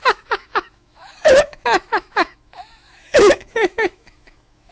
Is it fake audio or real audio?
fake